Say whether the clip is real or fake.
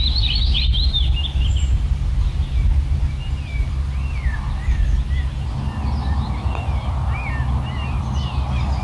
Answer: real